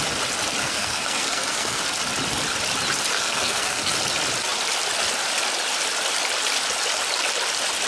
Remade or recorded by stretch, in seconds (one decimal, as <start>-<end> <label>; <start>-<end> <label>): 0.0-0.6 recorded; 0.6-1.8 remade; 1.8-3.1 recorded; 3.1-3.9 remade; 3.9-7.9 recorded